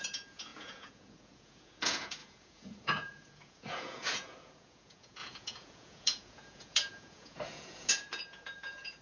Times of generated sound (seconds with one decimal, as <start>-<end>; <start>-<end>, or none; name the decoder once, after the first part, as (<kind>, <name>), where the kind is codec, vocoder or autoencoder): 0.0-9.0 (vocoder, Vocos)